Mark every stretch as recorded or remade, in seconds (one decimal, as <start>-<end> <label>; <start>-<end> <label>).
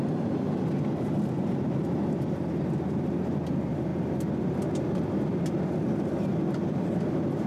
0.0-3.9 remade; 3.9-6.5 recorded; 6.5-7.5 remade